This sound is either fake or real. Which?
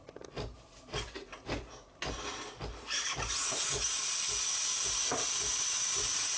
real